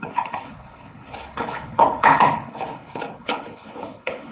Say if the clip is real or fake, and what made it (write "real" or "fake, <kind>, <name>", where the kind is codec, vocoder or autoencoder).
fake, codec, HILCodec